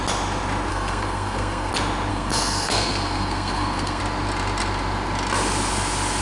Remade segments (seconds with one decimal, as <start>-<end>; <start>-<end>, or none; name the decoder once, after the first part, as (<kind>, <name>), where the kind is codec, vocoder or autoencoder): 0.7-1.7 (codec, SNAC); 2.1-4.0